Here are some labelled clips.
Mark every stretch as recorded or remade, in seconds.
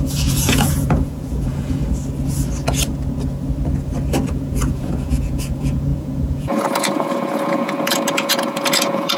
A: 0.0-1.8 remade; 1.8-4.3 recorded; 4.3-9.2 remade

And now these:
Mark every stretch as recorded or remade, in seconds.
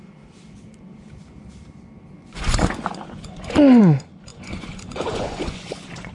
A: 0.0-2.2 recorded; 2.2-3.8 remade; 3.8-4.3 recorded; 4.3-6.1 remade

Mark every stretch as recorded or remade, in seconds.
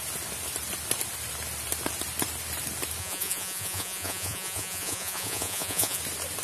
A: 0.0-3.0 recorded; 3.0-6.0 remade; 6.0-6.4 recorded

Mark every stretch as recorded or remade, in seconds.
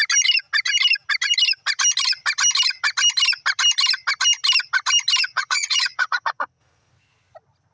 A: 0.0-5.2 recorded; 5.2-6.9 remade; 6.9-7.7 recorded